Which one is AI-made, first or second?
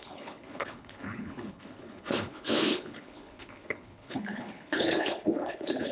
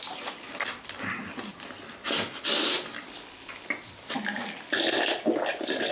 first